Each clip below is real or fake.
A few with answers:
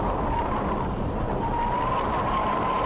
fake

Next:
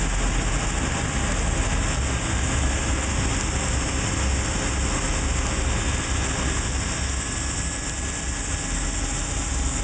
real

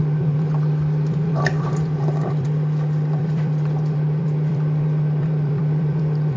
fake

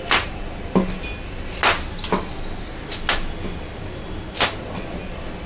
real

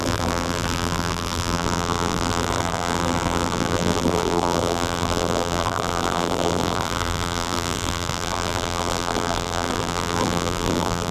fake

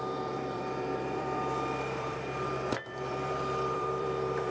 fake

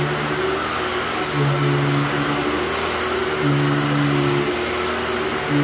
real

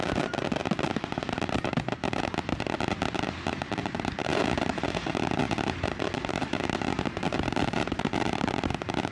fake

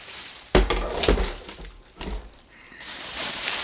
fake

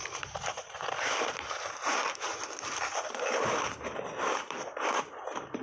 fake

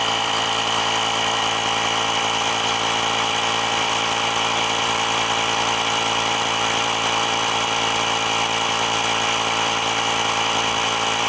fake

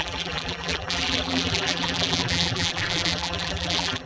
fake